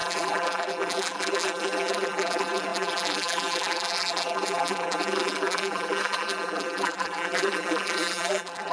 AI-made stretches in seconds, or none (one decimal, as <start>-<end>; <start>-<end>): 0.0-8.7